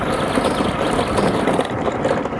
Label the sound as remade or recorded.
recorded